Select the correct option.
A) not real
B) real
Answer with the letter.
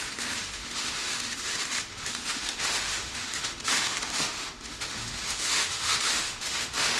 A